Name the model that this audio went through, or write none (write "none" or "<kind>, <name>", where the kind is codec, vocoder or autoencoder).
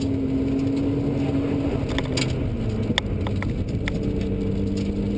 none